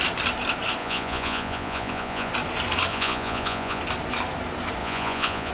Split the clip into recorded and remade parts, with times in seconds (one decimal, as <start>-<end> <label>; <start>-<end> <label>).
0.0-0.8 recorded; 0.8-2.3 remade; 2.3-2.9 recorded; 2.9-3.8 remade; 3.8-4.8 recorded; 4.8-5.5 remade